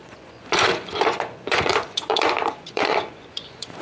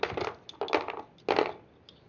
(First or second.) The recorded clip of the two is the second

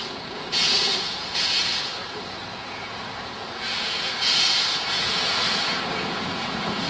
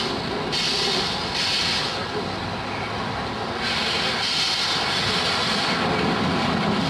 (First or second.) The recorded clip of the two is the second